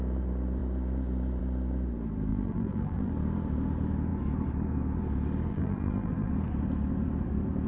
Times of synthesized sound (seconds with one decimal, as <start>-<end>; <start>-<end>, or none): 2.3-3.1; 5.5-6.3